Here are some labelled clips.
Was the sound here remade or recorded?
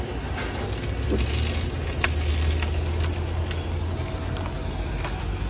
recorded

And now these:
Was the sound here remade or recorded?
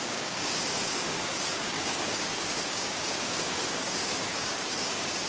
remade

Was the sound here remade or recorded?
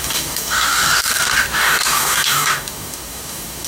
remade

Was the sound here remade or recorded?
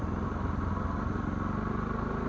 recorded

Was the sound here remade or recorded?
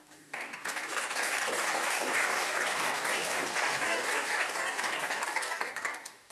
remade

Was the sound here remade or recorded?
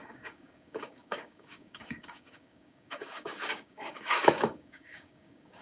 remade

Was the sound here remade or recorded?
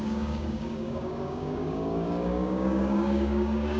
remade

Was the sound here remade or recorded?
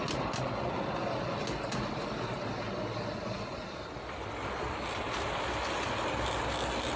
recorded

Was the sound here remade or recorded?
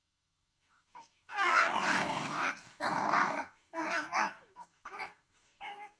remade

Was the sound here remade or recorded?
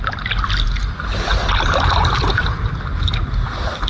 recorded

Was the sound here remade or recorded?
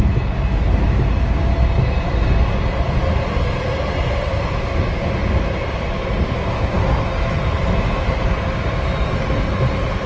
recorded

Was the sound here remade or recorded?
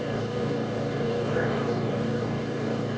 remade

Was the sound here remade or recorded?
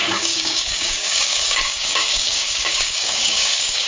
remade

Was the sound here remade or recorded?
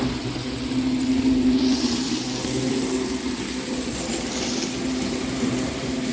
recorded